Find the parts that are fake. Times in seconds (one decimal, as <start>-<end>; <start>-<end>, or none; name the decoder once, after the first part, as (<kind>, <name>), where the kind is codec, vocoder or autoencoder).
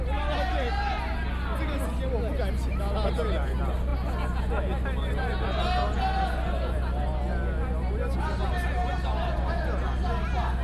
none